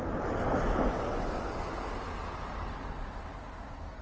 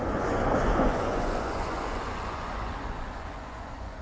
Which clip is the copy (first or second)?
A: second